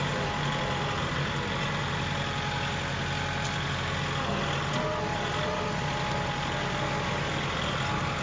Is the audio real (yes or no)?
yes